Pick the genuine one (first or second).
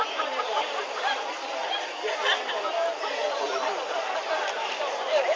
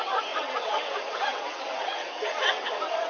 first